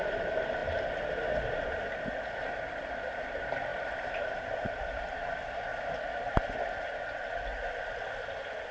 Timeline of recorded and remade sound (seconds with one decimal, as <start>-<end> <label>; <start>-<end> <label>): 0.0-0.6 remade; 0.6-2.9 recorded; 2.9-3.7 remade; 3.7-4.4 recorded; 4.4-5.7 remade; 5.7-6.3 recorded; 6.3-8.7 remade